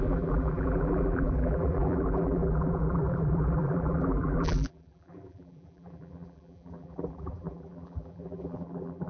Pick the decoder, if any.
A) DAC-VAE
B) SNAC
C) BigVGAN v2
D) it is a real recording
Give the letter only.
C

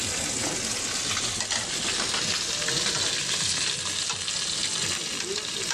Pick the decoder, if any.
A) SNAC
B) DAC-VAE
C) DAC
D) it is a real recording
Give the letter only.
D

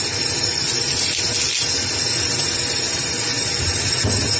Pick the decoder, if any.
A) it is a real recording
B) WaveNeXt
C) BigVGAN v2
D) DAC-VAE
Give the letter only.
A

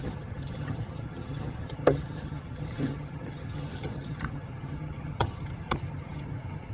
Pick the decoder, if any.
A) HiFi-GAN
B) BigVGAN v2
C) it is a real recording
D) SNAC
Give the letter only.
A